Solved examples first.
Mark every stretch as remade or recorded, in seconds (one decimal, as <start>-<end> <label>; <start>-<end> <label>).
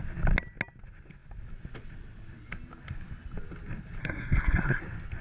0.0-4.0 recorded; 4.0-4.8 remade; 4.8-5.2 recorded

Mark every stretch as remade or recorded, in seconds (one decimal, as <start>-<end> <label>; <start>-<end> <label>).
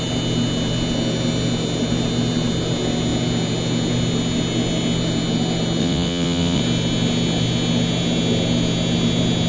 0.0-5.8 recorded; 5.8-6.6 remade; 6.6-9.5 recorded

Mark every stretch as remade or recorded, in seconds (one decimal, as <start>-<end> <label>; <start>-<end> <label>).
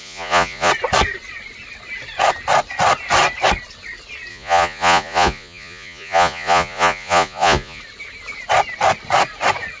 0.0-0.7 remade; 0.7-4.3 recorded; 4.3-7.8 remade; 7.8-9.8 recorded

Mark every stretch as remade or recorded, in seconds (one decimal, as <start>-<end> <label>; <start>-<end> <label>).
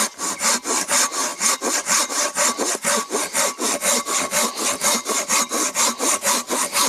0.0-6.9 recorded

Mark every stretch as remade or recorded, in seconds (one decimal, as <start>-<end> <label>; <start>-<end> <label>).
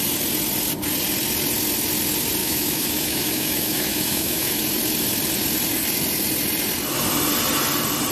0.0-2.4 recorded; 2.4-4.6 remade; 4.6-8.1 recorded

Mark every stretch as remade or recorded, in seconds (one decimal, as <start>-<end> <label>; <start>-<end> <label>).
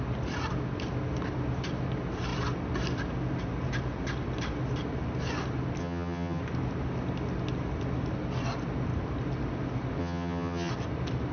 0.0-5.8 recorded; 5.8-6.4 remade; 6.4-10.0 recorded; 10.0-10.7 remade; 10.7-11.3 recorded